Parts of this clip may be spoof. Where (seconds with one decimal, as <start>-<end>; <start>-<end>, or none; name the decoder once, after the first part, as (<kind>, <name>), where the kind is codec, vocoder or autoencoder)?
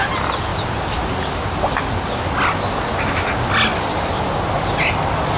none